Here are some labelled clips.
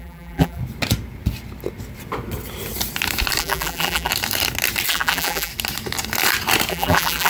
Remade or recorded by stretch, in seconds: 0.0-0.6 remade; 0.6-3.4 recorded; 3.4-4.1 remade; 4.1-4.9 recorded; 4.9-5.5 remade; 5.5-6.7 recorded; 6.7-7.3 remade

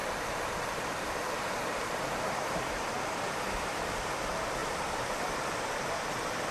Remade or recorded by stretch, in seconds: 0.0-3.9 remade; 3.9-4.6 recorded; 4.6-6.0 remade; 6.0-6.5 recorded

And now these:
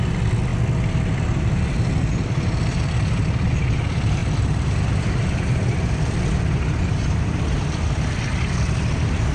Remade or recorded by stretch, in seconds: 0.0-4.2 recorded; 4.2-6.8 remade; 6.8-9.3 recorded

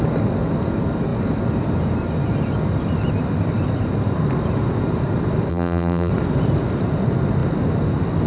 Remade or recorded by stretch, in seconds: 0.0-5.5 recorded; 5.5-6.1 remade; 6.1-8.3 recorded